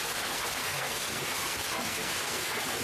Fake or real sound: fake